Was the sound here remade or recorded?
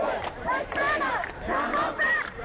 remade